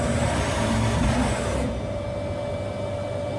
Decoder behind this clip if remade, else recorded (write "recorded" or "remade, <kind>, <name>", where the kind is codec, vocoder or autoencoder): recorded